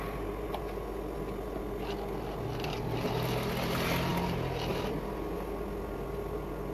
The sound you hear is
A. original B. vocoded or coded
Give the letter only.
A